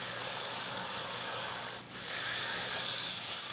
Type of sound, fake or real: fake